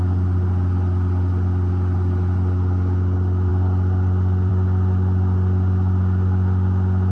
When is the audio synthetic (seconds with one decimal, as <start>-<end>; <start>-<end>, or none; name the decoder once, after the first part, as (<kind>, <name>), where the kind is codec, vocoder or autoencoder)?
none